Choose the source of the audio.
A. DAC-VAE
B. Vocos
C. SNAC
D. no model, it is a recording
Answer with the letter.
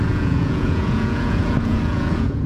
B